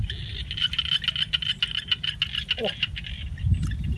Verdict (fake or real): real